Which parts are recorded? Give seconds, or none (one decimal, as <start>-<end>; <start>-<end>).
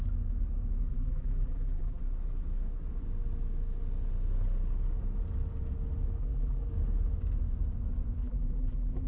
0.0-0.9; 2.0-6.2; 6.7-8.2